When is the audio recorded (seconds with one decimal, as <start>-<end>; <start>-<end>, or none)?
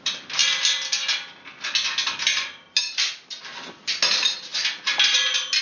0.0-5.6